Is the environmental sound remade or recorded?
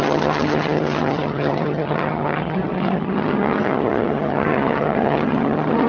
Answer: remade